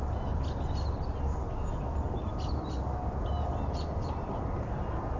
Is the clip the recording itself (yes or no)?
yes